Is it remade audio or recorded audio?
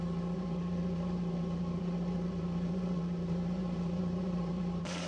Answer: remade